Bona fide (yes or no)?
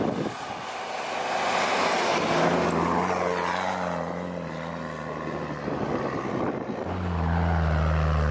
yes